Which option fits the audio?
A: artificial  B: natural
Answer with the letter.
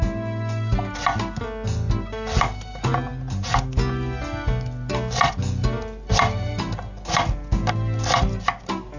B